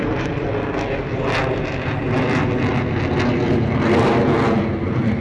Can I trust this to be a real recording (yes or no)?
yes